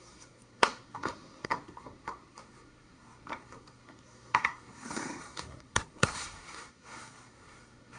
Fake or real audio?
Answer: fake